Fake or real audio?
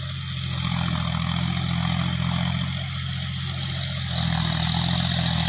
real